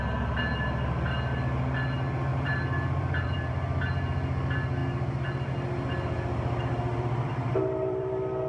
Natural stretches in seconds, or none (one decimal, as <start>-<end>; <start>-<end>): 0.0-2.3; 3.5-6.9